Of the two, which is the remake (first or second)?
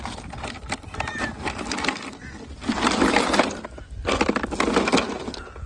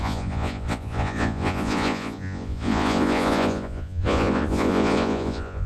second